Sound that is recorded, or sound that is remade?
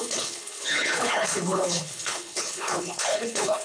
remade